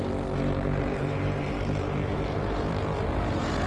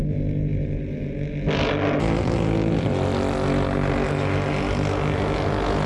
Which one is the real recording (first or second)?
second